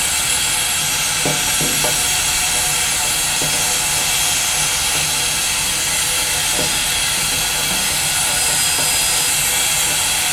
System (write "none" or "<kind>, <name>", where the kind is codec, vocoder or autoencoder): none